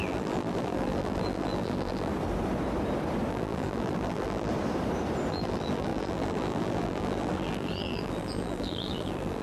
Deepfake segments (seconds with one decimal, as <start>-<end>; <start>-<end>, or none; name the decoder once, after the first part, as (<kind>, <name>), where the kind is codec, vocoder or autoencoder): 0.0-2.1 (vocoder, BigVGAN v2); 3.3-4.5; 5.3-9.4